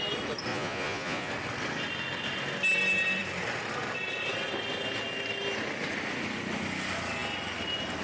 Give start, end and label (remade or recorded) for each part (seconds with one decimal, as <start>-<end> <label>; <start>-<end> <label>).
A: 0.0-0.5 recorded; 0.5-1.3 remade; 1.3-8.0 recorded